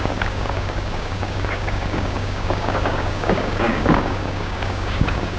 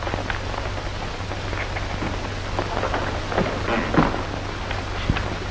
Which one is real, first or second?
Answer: second